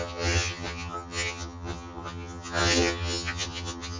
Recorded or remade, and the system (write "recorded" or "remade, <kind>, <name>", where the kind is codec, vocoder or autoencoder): remade, vocoder, HiFi-GAN